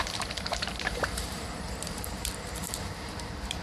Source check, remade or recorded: remade